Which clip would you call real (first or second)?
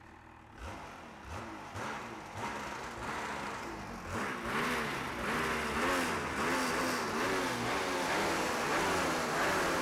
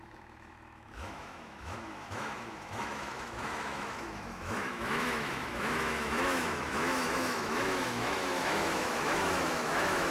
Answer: first